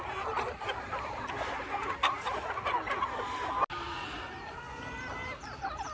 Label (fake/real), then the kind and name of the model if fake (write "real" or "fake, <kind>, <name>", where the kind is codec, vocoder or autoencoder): real